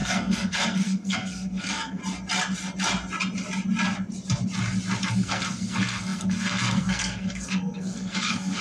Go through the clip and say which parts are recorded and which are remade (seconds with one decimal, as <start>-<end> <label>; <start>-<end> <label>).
0.0-2.0 remade; 2.0-5.1 recorded; 5.1-8.6 remade